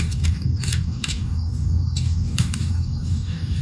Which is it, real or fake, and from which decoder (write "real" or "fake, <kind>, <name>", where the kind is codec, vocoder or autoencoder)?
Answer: fake, codec, DAC